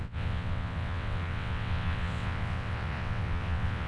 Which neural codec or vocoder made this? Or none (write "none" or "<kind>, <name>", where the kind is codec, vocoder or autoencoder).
vocoder, WaveNeXt